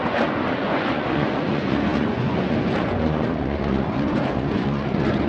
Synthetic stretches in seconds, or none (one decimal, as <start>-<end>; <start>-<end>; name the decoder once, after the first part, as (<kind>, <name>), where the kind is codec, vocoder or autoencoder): 0.0-5.3 (vocoder, Vocos)

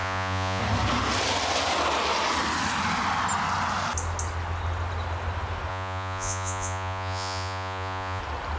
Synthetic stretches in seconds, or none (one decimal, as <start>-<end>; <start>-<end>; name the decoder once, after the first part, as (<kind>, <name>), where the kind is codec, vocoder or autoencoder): 0.0-0.6 (vocoder, Vocos); 5.7-8.2

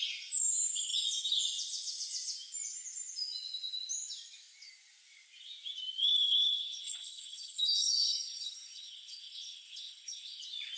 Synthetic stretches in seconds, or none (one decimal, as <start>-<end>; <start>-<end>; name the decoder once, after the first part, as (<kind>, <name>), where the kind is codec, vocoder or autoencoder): 6.0-10.4 (codec, HILCodec)

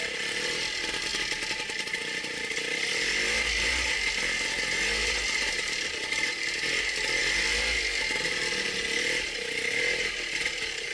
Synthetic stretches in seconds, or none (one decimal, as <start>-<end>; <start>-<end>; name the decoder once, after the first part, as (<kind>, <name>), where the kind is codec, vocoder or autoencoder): none

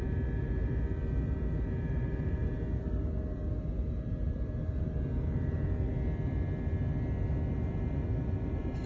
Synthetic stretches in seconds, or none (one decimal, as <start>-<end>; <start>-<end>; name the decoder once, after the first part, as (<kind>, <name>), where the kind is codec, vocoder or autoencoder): 0.0-5.9 (vocoder, BigVGAN v2); 7.5-8.9

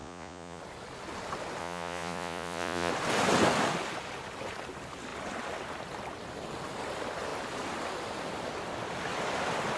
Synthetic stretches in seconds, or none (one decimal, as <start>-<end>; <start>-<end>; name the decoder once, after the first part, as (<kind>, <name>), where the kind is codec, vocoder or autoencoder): 0.0-0.6 (vocoder, Vocos); 1.6-2.9